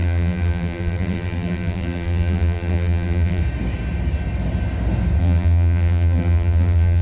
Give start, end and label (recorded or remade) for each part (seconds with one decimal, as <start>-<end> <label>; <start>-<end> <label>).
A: 0.0-3.4 remade; 3.4-5.2 recorded; 5.2-7.0 remade

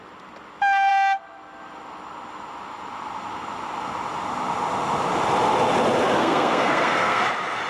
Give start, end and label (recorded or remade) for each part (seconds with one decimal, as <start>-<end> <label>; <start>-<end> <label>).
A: 0.0-6.2 recorded; 6.2-7.2 remade; 7.2-7.7 recorded